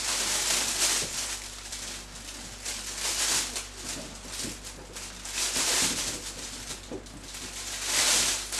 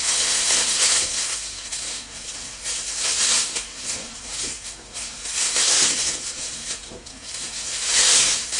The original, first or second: first